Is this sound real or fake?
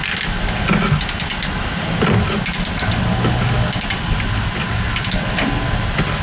real